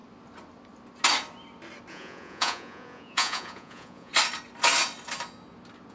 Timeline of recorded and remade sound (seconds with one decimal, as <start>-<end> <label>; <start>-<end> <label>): 0.0-1.9 recorded; 1.9-4.1 remade; 4.1-5.9 recorded